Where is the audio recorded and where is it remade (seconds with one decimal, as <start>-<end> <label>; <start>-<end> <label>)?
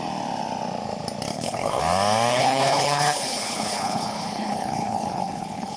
0.0-1.3 recorded; 1.3-1.8 remade; 1.8-2.3 recorded; 2.3-5.8 remade